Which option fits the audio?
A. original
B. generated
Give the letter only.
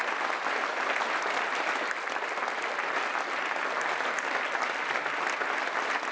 A